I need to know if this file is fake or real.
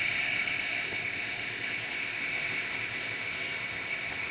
fake